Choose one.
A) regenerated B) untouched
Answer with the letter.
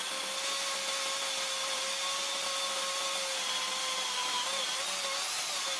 B